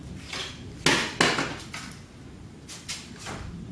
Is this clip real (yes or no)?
yes